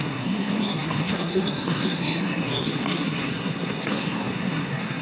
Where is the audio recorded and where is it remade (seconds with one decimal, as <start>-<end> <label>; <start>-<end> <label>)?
0.0-5.0 remade